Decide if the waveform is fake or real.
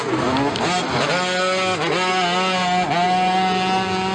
real